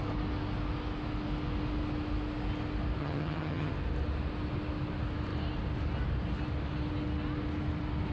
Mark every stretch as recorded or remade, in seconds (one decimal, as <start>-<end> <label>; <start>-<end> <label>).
0.0-3.0 recorded; 3.0-3.7 remade; 3.7-8.1 recorded